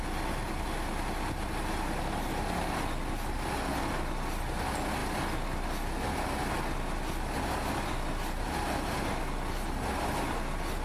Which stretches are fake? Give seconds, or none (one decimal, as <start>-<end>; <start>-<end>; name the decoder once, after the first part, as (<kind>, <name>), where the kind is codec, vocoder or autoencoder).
none